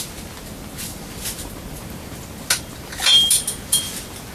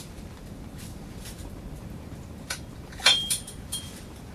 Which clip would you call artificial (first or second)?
second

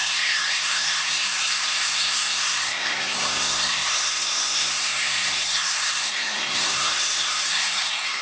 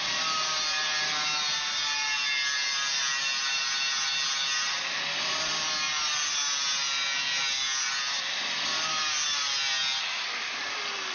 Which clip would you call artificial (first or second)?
first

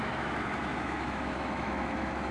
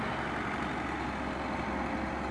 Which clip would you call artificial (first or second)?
first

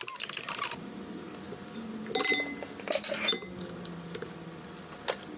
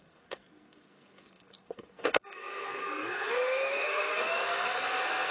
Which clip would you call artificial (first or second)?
second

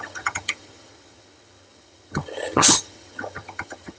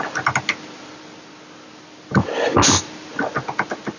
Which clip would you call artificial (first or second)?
first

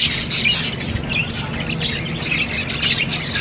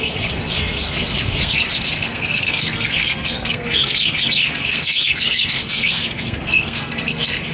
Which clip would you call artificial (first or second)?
second